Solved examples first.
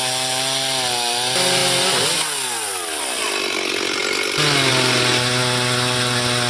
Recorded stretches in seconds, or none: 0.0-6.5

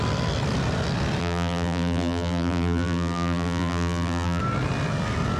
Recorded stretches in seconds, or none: 0.0-1.2; 4.4-5.4

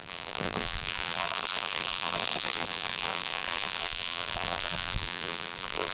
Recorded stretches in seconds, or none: none

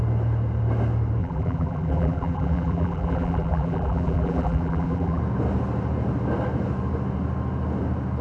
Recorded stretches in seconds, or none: 0.0-1.2; 5.2-8.2

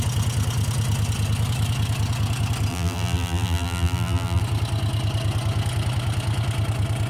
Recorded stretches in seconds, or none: 0.0-2.7; 4.4-7.1

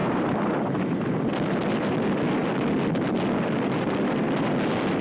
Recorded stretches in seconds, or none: 1.3-5.0

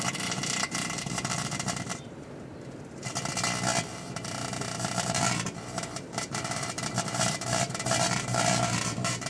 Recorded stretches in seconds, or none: 3.1-3.9